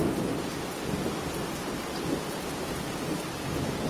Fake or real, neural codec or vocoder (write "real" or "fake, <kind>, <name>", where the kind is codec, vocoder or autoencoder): fake, vocoder, BigVGAN v2